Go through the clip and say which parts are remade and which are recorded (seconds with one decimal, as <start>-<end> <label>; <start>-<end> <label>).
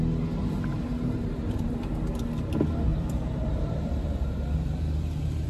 0.0-0.7 recorded; 0.7-1.9 remade; 1.9-2.9 recorded; 2.9-5.5 remade